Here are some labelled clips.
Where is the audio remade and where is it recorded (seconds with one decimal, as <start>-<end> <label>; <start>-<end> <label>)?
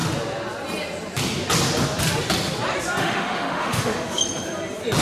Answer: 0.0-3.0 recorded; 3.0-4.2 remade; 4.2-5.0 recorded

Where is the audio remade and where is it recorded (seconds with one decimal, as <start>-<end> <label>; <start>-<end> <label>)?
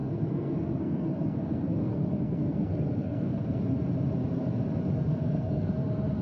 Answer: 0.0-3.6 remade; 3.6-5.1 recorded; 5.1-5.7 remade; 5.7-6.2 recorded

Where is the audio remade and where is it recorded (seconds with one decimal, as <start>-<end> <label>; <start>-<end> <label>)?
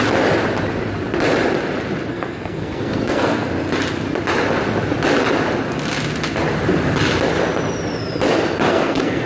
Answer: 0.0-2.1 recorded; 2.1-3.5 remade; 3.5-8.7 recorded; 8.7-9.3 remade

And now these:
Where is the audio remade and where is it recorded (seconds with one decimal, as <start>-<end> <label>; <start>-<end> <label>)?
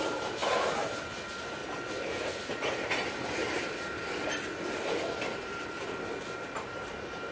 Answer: 0.0-7.3 recorded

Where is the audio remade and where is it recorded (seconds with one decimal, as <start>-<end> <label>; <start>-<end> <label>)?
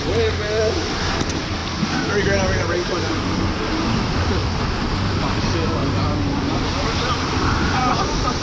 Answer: 0.0-8.4 recorded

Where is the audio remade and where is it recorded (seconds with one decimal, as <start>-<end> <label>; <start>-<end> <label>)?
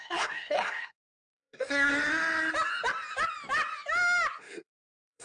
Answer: 0.0-1.9 remade; 1.9-4.4 recorded; 4.4-5.2 remade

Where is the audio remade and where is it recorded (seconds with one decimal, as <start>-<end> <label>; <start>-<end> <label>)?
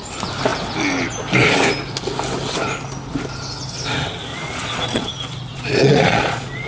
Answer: 0.0-4.3 recorded; 4.3-5.1 remade; 5.1-5.5 recorded; 5.5-6.7 remade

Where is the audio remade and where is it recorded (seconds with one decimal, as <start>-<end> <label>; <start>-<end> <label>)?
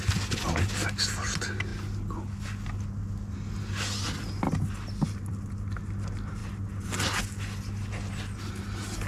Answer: 0.0-9.1 recorded